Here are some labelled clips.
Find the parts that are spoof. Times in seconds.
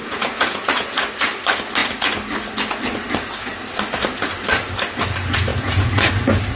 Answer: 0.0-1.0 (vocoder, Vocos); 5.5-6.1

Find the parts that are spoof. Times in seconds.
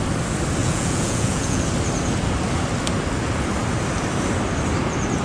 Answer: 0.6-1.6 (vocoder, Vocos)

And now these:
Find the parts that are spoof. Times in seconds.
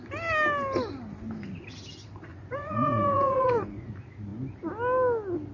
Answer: 2.3-3.9 (vocoder, Vocos)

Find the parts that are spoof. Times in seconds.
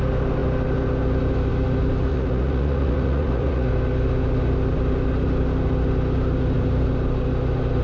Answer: 2.1-3.7 (vocoder, Vocos)